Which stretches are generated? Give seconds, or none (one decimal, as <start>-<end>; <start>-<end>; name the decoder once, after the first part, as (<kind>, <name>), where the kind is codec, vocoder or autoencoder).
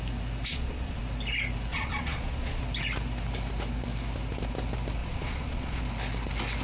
0.5-1.0 (vocoder, Vocos); 1.7-2.6; 5.0-5.8